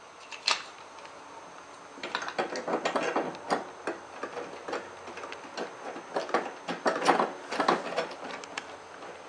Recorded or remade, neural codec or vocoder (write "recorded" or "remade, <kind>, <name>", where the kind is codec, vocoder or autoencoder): recorded